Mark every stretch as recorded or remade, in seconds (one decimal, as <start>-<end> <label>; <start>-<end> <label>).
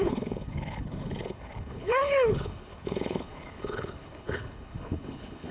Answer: 0.0-5.5 remade